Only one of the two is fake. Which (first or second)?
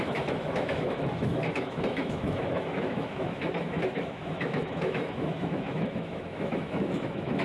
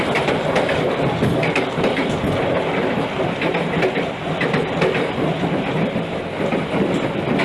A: first